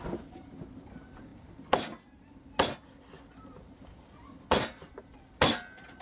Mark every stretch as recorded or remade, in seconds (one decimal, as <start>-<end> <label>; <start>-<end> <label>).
0.0-6.0 recorded